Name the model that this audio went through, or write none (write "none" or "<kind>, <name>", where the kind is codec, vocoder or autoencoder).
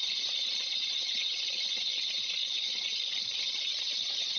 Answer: none